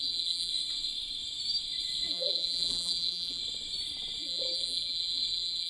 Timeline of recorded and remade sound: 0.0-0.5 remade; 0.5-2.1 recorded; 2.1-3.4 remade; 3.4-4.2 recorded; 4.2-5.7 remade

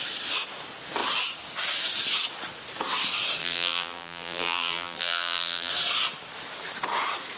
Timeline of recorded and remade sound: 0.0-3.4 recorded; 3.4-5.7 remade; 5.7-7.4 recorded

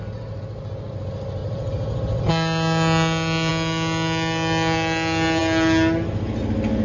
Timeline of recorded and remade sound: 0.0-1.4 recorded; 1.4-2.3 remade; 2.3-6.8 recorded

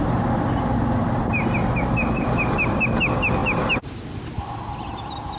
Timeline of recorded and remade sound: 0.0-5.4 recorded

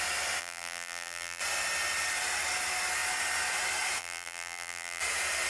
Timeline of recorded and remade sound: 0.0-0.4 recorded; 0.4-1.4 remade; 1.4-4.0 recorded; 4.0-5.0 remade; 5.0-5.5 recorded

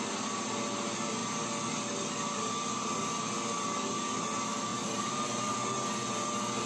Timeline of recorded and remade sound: 0.0-4.7 recorded; 4.7-5.5 remade; 5.5-6.7 recorded

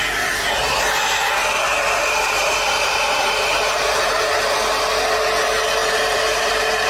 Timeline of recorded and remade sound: 0.0-2.0 recorded; 2.0-4.2 remade; 4.2-5.8 recorded; 5.8-6.9 remade

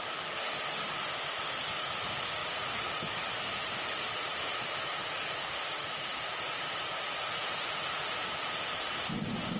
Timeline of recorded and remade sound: 0.0-5.8 recorded; 5.8-8.7 remade; 8.7-9.6 recorded